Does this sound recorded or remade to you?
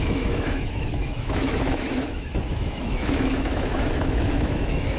remade